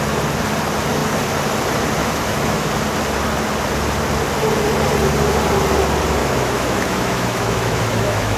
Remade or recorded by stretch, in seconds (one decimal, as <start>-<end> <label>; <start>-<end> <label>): 0.0-2.0 recorded; 2.0-2.7 remade; 2.7-6.2 recorded; 6.2-8.4 remade